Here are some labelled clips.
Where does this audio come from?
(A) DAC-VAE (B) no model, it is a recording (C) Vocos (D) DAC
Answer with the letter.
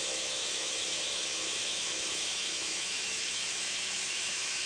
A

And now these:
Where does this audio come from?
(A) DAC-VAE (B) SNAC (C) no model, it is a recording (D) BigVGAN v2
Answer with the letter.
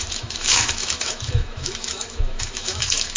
A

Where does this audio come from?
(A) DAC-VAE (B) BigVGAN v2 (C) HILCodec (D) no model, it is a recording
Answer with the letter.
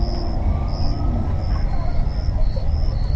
D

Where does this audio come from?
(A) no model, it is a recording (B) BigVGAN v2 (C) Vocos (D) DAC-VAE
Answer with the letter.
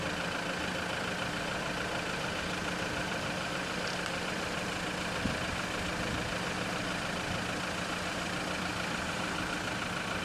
A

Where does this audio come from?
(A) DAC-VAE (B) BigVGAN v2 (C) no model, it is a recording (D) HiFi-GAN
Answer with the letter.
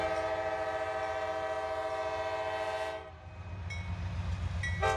C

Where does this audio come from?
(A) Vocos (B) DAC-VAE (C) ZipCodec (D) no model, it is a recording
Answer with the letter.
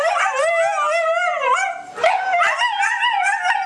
D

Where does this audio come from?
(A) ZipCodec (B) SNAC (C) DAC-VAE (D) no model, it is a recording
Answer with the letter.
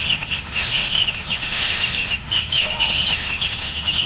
C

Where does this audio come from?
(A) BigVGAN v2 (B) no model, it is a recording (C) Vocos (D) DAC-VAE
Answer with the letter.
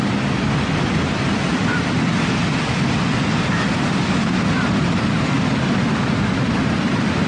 B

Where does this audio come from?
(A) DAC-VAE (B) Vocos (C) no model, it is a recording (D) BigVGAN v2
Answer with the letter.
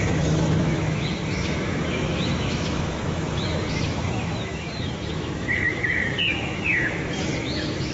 A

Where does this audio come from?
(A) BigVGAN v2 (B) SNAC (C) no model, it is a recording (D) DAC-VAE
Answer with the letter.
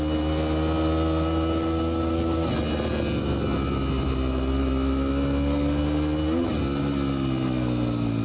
C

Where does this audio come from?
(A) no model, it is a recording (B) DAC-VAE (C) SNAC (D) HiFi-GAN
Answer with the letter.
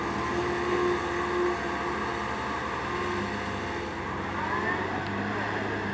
A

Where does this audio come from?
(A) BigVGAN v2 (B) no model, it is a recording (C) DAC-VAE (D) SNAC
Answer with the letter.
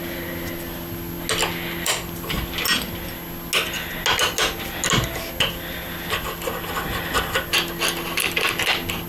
B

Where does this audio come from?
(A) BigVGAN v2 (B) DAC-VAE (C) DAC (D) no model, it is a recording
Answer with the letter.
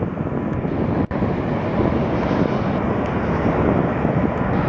D